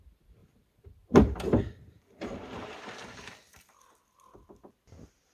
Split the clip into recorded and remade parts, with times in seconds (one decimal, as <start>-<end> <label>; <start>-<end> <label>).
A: 0.0-0.4 recorded; 0.4-3.6 remade; 3.6-5.3 recorded